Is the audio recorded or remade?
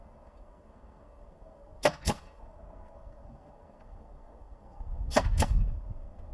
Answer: remade